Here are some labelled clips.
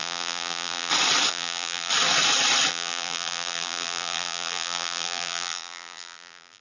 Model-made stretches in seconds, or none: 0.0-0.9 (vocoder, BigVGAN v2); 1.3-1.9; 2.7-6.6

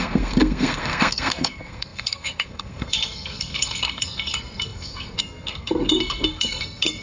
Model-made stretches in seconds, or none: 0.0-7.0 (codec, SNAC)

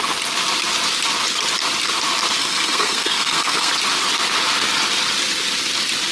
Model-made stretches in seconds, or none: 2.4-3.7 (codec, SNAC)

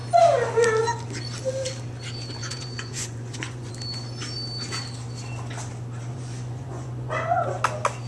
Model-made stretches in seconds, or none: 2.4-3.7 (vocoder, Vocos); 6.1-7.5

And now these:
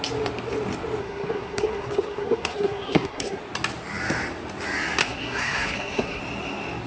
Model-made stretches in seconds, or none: 1.0-3.4 (codec, SNAC); 5.0-6.2

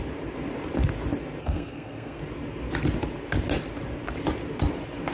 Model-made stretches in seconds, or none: 1.4-2.2 (codec, SNAC)